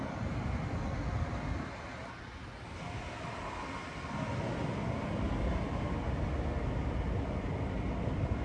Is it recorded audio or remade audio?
recorded